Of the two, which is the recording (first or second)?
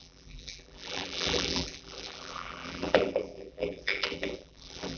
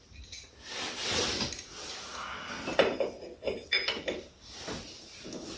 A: second